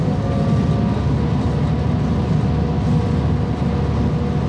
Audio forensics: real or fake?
real